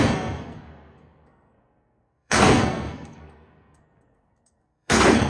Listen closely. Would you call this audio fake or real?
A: fake